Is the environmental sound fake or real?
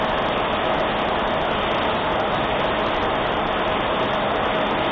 real